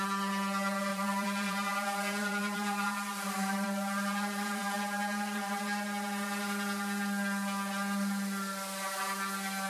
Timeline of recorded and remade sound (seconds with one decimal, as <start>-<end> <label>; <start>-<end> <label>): 0.0-0.9 recorded; 0.9-5.6 remade; 5.6-9.7 recorded